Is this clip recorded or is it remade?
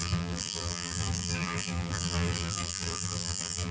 remade